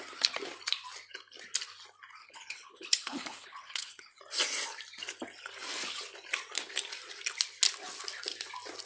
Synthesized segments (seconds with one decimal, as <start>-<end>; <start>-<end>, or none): 2.2-4.2